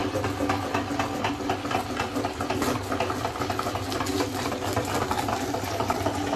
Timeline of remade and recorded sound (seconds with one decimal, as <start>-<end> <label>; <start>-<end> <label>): 0.0-6.4 recorded